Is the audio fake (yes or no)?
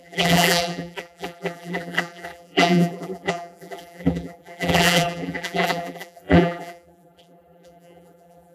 yes